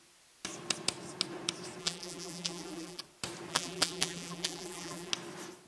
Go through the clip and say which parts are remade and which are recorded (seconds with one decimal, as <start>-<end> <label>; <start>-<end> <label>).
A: 0.0-1.8 recorded; 1.8-3.0 remade; 3.0-3.5 recorded; 3.5-5.1 remade; 5.1-5.7 recorded